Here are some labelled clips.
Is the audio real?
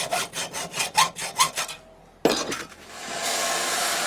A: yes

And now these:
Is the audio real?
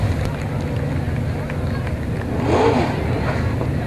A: yes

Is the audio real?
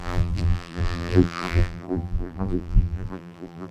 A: no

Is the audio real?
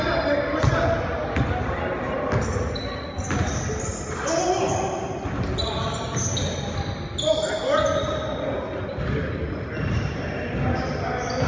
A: yes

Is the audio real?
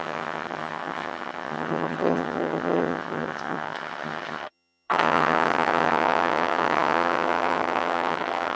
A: no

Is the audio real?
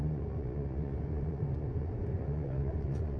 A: no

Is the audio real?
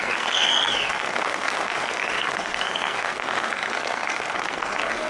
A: no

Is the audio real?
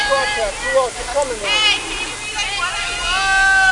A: yes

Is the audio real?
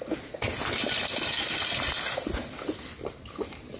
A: yes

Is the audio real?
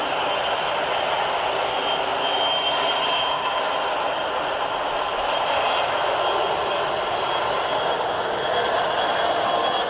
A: yes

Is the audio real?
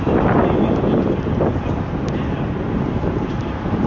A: yes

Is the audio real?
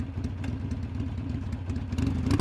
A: yes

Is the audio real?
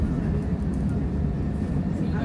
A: yes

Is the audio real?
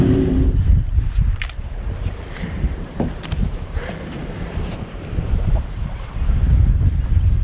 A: no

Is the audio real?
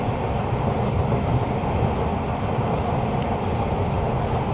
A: yes